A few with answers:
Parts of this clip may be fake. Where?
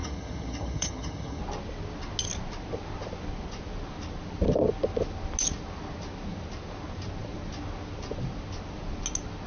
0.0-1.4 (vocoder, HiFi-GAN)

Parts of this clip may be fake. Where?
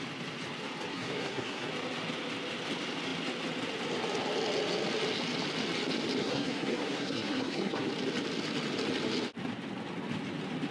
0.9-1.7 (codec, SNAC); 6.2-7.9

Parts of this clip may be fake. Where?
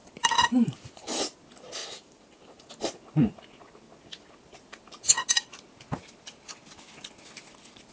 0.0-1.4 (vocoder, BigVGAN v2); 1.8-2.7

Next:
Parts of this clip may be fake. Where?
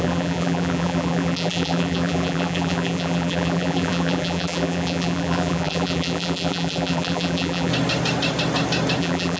0.0-7.7 (vocoder, BigVGAN v2); 9.0-9.4